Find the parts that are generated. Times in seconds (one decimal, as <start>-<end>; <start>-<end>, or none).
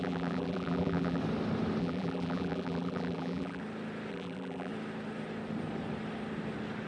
0.0-1.2; 1.8-3.6; 4.1-4.7